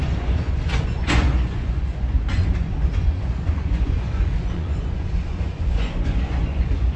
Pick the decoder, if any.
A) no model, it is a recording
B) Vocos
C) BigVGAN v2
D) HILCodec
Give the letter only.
B